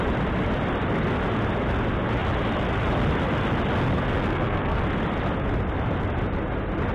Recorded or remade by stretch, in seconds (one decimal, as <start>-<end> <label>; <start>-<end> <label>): 0.0-4.2 recorded; 4.2-4.8 remade; 4.8-6.9 recorded